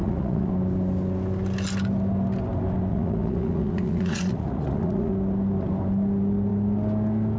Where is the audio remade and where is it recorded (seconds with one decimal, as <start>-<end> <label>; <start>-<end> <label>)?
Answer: 0.0-0.5 remade; 0.5-2.9 recorded; 2.9-5.1 remade; 5.1-7.4 recorded